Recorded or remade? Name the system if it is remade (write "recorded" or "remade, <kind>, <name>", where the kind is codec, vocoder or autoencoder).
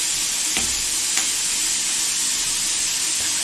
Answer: recorded